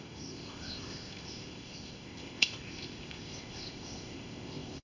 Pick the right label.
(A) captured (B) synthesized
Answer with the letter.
B